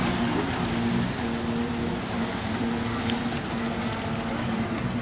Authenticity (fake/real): real